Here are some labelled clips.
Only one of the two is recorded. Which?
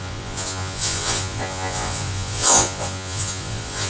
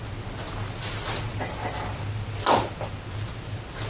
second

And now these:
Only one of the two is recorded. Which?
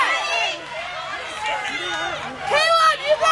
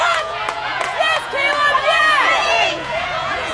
first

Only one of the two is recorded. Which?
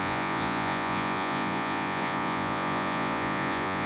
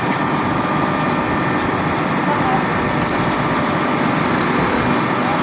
second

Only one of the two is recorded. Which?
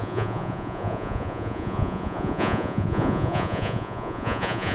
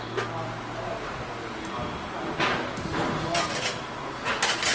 second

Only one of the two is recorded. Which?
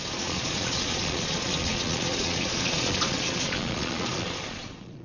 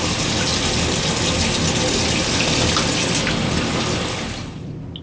second